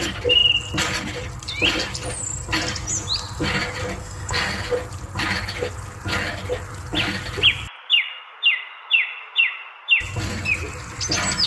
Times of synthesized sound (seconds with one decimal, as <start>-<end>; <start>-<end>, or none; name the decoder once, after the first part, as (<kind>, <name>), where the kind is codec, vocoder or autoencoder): 4.0-4.7 (codec, SNAC)